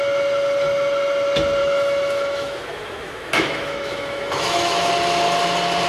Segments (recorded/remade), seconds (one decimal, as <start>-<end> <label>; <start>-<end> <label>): 0.0-1.6 recorded; 1.6-4.9 remade; 4.9-5.9 recorded